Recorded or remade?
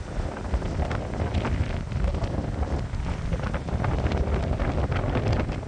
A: recorded